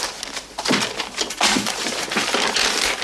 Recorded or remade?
recorded